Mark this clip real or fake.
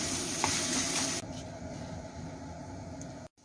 real